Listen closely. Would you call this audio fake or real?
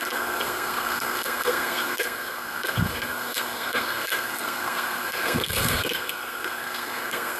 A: fake